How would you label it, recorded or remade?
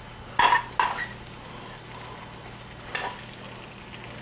recorded